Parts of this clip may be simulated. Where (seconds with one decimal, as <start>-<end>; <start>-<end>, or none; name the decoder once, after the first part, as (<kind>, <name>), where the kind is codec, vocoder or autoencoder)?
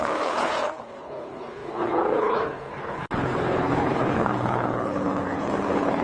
0.0-6.0 (codec, HILCodec)